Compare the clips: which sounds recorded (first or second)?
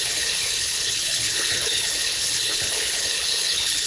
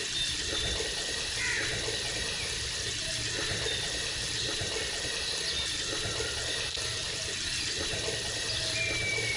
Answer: second